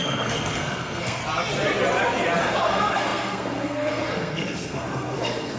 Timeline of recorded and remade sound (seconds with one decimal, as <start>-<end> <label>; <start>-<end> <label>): 0.0-1.2 remade; 1.2-2.4 recorded; 2.4-5.6 remade